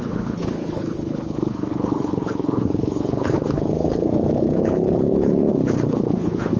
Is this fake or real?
fake